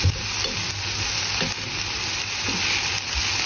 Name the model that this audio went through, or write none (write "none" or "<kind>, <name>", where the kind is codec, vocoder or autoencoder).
none